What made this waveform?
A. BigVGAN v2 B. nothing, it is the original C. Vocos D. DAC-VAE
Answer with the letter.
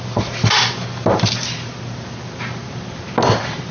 B